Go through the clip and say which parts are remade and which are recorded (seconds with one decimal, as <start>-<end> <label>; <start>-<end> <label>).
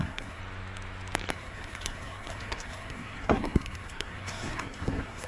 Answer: 0.0-0.4 remade; 0.4-1.3 recorded; 1.3-5.3 remade